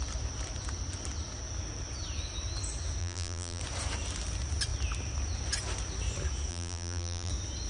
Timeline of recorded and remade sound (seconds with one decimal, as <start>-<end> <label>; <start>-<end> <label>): 0.0-3.0 recorded; 3.0-3.6 remade; 3.6-6.5 recorded; 6.5-7.3 remade; 7.3-7.7 recorded